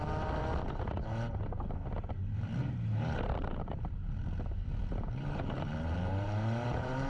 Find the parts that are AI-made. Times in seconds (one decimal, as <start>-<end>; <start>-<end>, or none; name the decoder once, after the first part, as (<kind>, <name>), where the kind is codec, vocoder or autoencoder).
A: 2.6-7.1 (vocoder, BigVGAN v2)